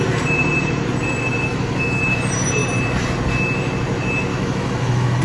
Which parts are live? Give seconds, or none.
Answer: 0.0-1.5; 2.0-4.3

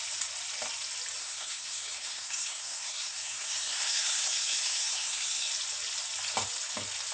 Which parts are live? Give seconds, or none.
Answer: 0.0-1.2; 5.5-7.1

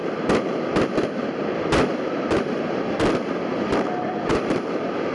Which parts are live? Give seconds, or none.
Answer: 0.0-1.9